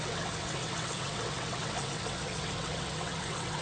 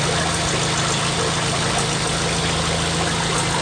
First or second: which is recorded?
second